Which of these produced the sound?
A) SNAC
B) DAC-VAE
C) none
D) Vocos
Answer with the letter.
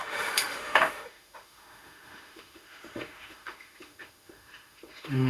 B